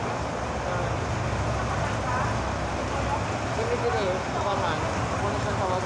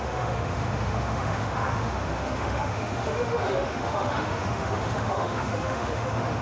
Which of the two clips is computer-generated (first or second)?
second